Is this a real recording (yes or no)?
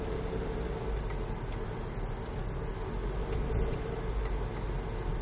yes